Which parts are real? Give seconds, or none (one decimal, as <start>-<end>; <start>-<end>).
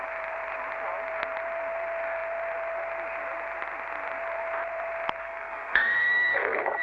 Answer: 0.0-5.2